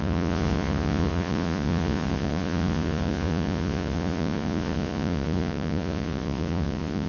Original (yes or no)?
no